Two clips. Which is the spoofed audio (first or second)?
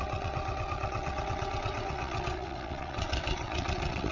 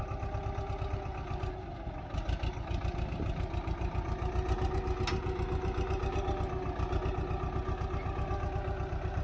first